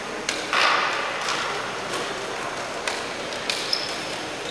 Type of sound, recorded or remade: remade